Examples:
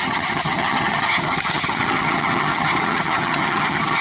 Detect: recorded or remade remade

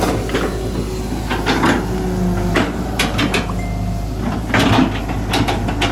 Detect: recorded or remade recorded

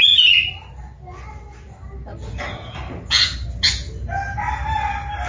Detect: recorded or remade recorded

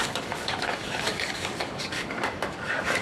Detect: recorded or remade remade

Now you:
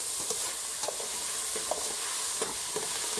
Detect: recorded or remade recorded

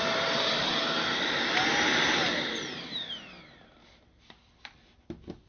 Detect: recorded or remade remade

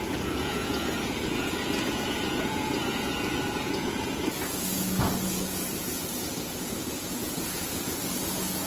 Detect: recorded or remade remade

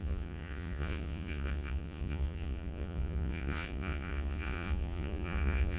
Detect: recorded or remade remade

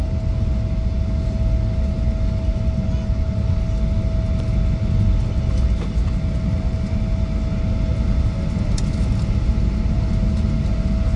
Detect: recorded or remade recorded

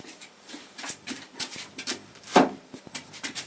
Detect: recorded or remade remade